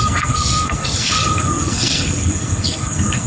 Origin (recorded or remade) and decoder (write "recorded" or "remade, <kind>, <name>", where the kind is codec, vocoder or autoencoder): remade, codec, SNAC